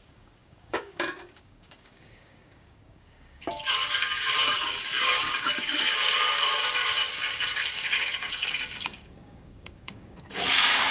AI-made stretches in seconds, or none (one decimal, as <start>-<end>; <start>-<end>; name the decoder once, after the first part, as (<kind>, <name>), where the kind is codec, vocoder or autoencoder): 0.0-10.9 (codec, DAC)